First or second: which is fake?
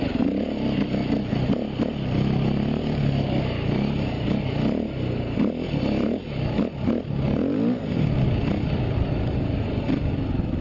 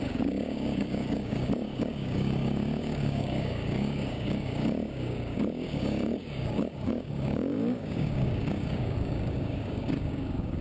second